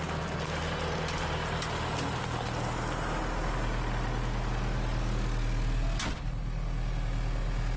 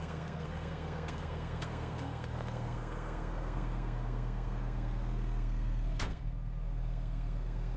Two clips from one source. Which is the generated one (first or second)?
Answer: second